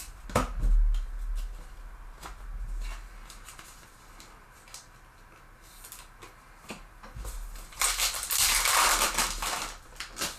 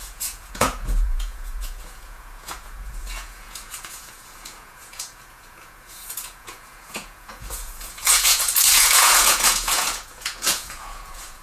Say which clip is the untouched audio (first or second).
first